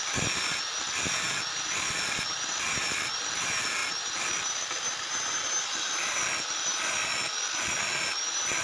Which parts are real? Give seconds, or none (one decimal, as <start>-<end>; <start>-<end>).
0.0-8.6